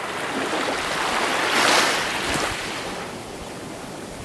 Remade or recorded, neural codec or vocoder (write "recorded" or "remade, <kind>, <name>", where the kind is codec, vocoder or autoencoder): recorded